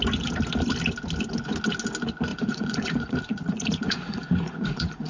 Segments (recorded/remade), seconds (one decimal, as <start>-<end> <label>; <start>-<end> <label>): 0.0-2.3 recorded; 2.3-5.1 remade